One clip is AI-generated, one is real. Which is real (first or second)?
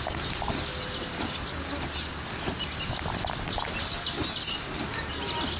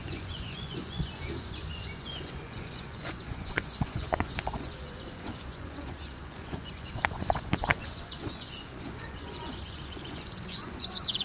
first